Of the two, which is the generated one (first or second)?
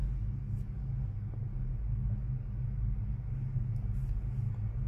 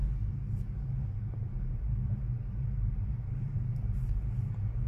second